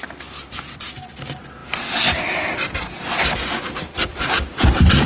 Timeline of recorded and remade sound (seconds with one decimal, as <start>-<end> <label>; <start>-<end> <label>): 0.0-5.1 recorded